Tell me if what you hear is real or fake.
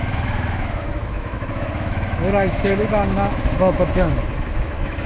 fake